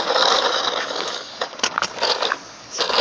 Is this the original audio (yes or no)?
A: no